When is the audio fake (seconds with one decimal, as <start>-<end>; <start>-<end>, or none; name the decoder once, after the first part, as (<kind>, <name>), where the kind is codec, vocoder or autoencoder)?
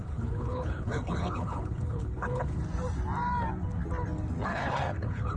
0.0-2.6 (codec, HILCodec); 4.5-5.4